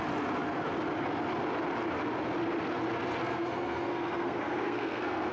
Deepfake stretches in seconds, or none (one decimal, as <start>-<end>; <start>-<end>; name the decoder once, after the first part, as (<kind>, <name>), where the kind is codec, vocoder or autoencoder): 3.2-5.3 (codec, SNAC)